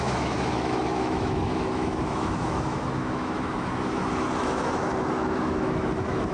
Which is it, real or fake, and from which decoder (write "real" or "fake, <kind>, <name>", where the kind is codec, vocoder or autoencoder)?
fake, autoencoder, DAC-VAE